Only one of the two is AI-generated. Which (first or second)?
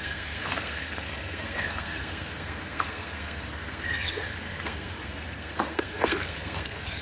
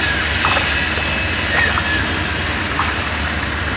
first